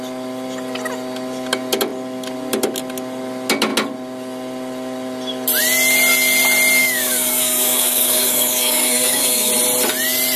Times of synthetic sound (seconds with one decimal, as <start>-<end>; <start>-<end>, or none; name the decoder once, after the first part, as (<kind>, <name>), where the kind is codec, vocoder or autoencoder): 6.8-9.5 (codec, DAC)